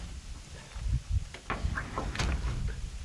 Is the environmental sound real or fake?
real